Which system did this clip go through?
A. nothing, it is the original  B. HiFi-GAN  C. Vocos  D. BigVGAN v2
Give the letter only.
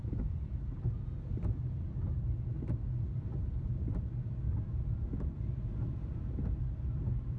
D